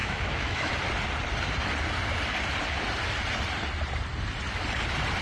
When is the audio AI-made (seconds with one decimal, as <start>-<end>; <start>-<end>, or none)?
0.0-0.7